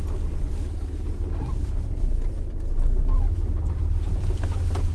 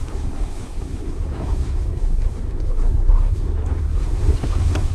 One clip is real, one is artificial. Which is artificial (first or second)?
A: second